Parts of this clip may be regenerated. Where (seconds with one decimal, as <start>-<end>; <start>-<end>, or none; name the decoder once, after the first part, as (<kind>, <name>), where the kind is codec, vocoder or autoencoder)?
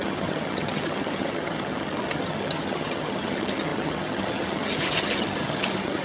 0.0-6.0 (vocoder, HiFi-GAN)